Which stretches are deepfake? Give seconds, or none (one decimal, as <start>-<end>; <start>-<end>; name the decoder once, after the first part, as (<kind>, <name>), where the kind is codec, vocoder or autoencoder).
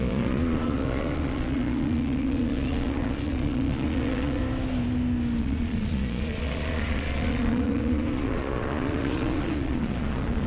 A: 0.0-4.4 (vocoder, Vocos); 5.4-10.5